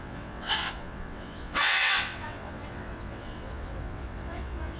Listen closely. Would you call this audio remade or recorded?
remade